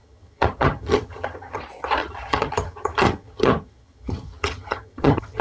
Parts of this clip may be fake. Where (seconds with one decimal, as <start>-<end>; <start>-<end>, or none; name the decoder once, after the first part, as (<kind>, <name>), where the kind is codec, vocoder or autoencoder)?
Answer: 0.0-1.6 (vocoder, HiFi-GAN); 2.0-5.4